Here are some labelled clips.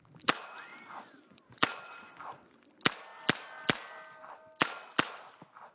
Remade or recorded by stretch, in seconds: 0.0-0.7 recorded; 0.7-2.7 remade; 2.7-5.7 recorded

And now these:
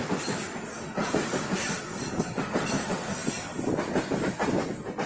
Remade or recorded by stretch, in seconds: 0.0-1.0 recorded; 1.0-1.8 remade; 1.8-5.1 recorded

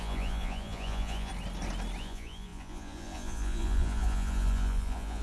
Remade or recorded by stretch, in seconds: 0.0-1.3 remade; 1.3-2.0 recorded; 2.0-5.2 remade

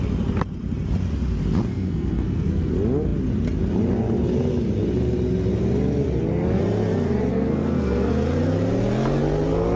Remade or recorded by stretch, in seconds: 0.0-1.7 recorded; 1.7-2.7 remade; 2.7-7.3 recorded; 7.3-8.1 remade; 8.1-9.8 recorded

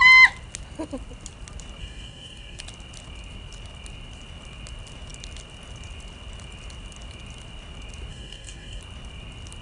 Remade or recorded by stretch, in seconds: 0.0-1.8 recorded; 1.8-2.6 remade; 2.6-8.1 recorded; 8.1-8.8 remade; 8.8-9.6 recorded